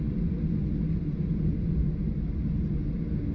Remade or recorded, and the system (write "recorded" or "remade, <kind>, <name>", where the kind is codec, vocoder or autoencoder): recorded